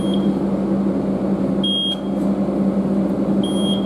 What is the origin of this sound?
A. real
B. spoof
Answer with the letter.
A